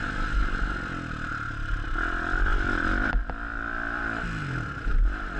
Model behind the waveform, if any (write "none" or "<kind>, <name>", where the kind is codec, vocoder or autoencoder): none